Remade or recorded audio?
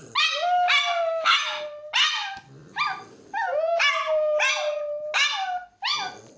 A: recorded